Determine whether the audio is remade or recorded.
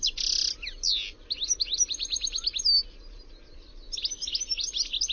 recorded